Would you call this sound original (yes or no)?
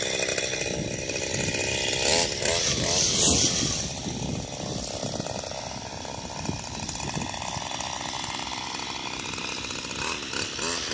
yes